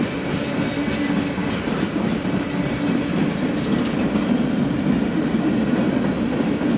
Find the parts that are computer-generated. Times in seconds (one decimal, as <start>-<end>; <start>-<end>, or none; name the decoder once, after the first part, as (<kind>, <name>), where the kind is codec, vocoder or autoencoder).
none